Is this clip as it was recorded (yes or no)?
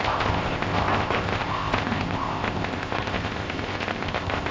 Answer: no